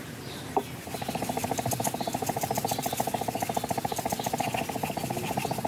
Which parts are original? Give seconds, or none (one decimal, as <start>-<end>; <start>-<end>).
0.0-5.7